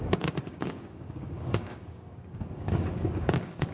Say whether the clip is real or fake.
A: fake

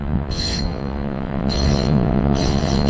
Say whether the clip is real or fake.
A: fake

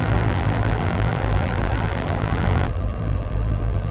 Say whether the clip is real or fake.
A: fake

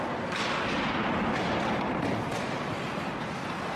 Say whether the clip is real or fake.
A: real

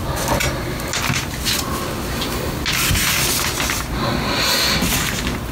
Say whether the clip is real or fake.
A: real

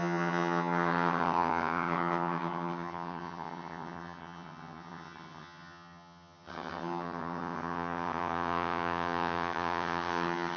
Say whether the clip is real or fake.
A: fake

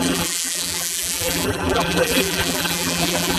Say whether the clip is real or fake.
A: fake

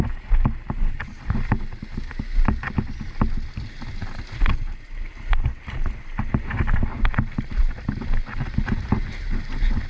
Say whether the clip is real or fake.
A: real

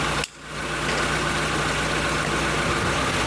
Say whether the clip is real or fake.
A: real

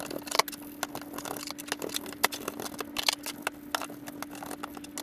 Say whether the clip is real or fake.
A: real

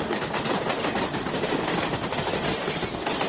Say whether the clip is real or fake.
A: real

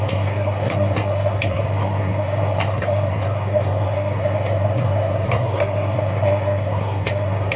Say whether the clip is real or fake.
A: fake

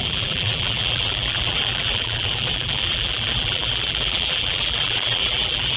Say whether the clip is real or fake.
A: fake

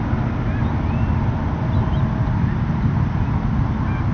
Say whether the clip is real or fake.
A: real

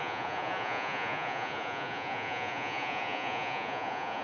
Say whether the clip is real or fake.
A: fake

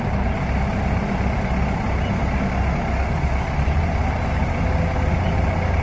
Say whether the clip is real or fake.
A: real